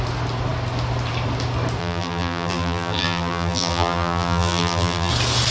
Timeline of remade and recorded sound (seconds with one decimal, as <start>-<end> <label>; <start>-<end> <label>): 0.0-1.8 recorded; 1.8-5.1 remade; 5.1-5.5 recorded